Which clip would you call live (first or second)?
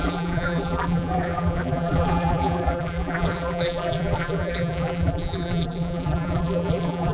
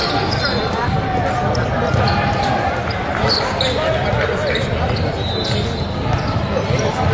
second